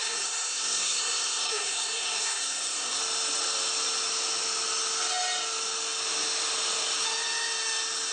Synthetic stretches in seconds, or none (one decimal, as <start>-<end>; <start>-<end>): 0.0-3.0